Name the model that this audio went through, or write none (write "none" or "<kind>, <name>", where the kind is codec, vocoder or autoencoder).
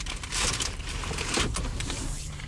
vocoder, BigVGAN v2